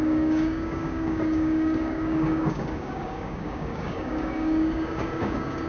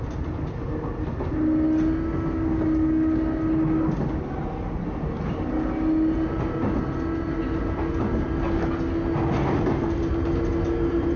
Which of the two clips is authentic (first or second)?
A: second